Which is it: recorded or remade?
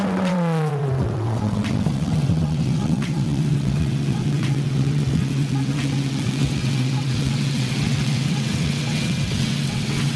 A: remade